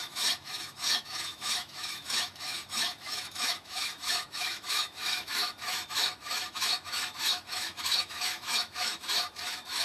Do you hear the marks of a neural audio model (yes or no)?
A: yes